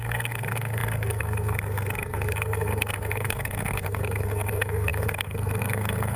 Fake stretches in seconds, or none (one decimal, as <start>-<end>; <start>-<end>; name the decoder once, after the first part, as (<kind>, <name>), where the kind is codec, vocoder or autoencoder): 0.0-6.2 (codec, SNAC)